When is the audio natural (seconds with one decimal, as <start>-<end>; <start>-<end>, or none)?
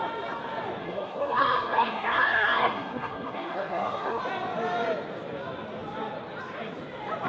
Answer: 0.0-0.8; 4.2-7.3